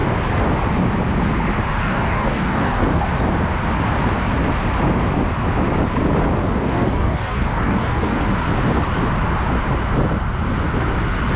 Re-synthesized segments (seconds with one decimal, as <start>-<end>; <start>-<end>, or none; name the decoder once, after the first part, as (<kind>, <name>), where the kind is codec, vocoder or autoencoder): 1.8-3.0 (codec, DAC); 6.4-8.2